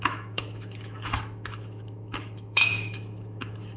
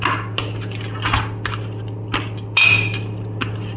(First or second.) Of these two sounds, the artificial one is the first